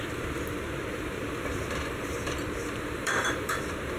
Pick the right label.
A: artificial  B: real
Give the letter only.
A